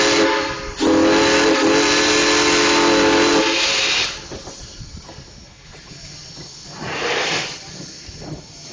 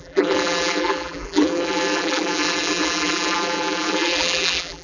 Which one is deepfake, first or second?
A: second